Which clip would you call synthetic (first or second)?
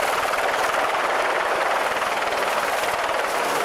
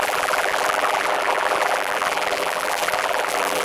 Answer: second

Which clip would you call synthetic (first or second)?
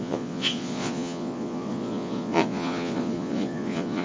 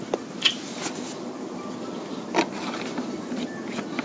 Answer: first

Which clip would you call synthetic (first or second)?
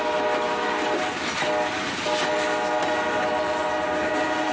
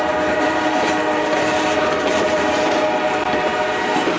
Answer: second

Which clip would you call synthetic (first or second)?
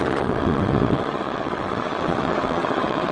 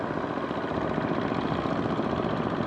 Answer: first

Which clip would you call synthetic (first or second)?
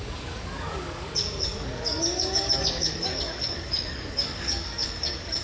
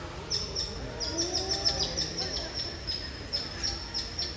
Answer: first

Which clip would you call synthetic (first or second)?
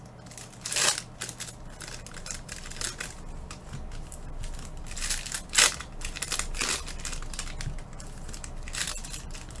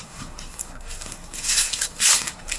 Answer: second